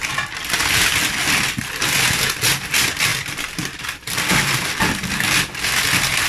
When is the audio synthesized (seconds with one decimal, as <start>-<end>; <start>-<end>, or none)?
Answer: 3.1-4.9